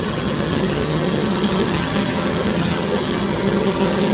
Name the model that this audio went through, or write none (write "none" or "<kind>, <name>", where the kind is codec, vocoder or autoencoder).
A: vocoder, HiFi-GAN